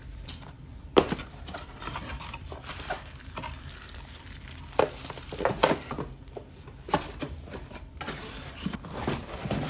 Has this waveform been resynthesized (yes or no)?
yes